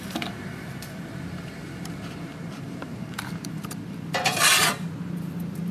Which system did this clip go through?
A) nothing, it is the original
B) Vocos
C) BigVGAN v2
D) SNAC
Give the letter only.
C